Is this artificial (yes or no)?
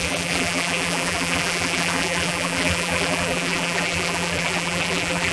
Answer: yes